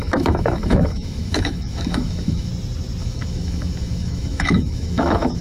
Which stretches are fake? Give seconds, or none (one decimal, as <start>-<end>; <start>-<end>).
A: 0.0-2.5; 3.0-5.4